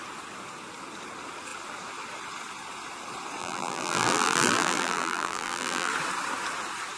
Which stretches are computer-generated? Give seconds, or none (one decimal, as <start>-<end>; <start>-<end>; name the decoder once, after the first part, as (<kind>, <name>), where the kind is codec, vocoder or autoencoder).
3.4-5.9 (vocoder, BigVGAN v2)